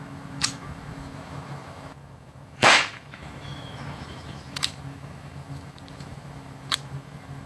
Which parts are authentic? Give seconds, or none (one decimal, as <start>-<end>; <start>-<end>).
none